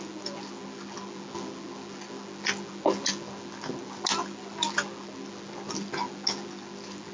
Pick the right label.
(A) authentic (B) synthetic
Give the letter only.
A